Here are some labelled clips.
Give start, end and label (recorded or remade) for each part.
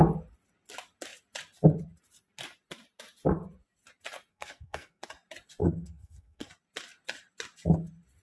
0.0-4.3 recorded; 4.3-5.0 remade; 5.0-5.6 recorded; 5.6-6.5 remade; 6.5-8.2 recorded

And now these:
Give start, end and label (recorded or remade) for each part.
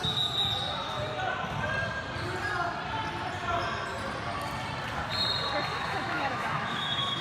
0.0-5.7 recorded; 5.7-7.2 remade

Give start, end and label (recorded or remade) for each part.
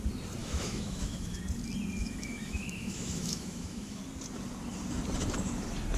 0.0-0.4 recorded; 0.4-1.4 remade; 1.4-2.0 recorded; 2.0-4.0 remade; 4.0-6.0 recorded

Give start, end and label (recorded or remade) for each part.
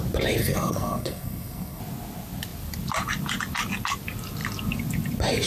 0.0-0.4 recorded; 0.4-1.8 remade; 1.8-5.5 recorded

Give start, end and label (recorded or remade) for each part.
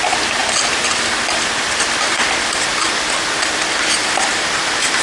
0.0-5.0 recorded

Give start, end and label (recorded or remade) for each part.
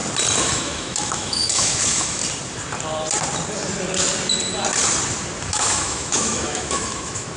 0.0-0.5 recorded; 0.5-2.2 remade; 2.2-5.4 recorded; 5.4-7.4 remade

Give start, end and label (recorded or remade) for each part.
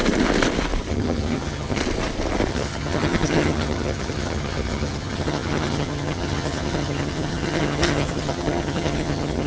0.0-0.9 recorded; 0.9-1.8 remade; 1.8-2.5 recorded; 2.5-9.5 remade